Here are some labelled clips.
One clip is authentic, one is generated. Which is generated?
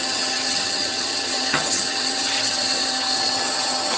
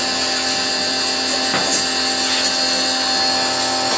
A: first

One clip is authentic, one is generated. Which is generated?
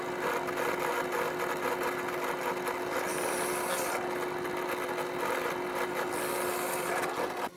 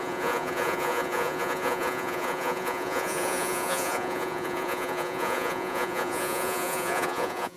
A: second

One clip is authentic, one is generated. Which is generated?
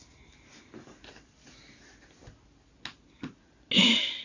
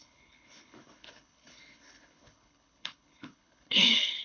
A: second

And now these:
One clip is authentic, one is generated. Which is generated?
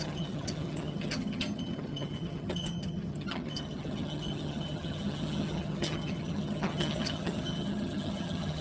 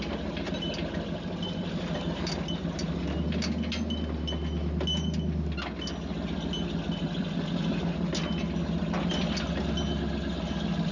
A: first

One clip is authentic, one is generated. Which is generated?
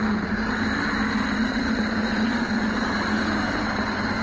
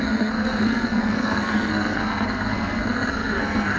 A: second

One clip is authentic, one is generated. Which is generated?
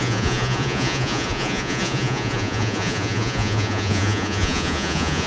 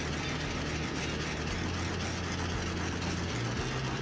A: first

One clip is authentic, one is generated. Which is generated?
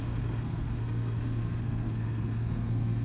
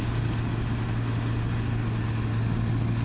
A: first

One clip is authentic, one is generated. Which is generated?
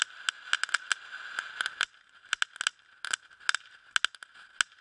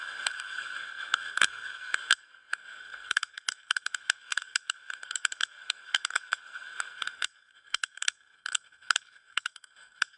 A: second